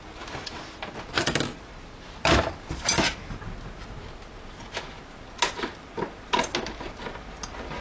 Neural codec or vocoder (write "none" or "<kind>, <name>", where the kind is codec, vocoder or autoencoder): none